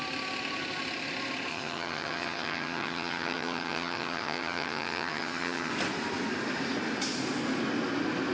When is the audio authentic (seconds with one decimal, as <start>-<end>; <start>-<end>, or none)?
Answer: 0.0-1.5; 5.7-8.3